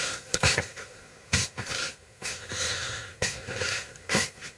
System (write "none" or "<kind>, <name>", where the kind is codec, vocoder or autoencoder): codec, SNAC